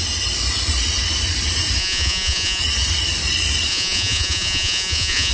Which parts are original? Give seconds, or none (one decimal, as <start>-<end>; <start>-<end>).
0.0-1.8; 2.6-3.7